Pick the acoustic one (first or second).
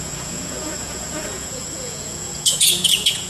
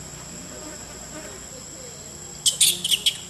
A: second